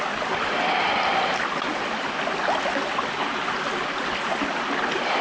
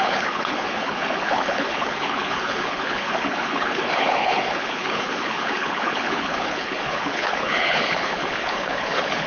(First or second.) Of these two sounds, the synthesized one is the second